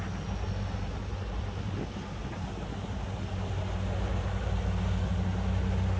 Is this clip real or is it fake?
real